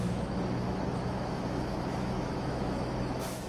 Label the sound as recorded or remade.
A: remade